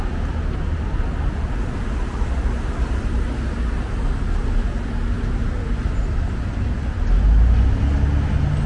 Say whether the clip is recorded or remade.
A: recorded